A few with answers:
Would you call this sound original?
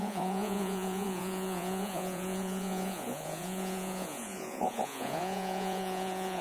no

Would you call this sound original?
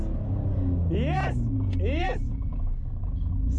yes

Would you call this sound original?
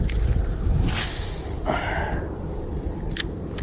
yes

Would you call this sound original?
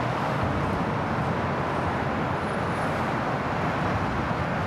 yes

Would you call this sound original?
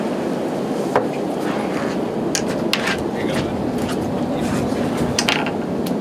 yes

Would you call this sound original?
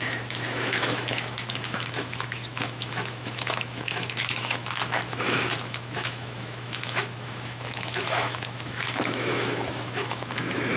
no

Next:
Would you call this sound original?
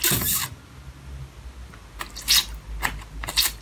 yes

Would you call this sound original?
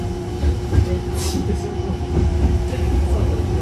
yes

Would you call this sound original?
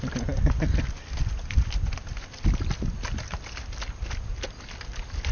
yes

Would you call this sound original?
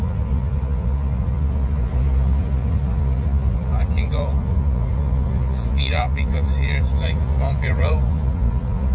no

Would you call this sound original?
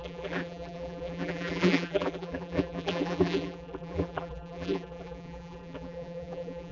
no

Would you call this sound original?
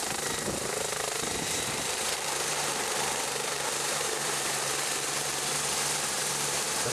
no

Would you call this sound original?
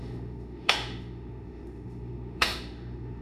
no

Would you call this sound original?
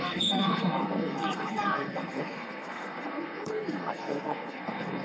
no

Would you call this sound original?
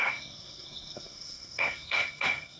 no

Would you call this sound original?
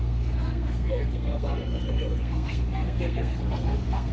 no